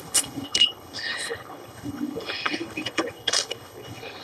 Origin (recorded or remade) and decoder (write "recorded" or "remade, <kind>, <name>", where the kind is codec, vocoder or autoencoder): remade, codec, HILCodec